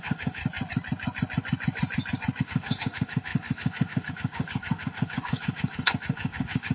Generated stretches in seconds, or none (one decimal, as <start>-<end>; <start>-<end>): 0.0-0.4; 2.4-6.7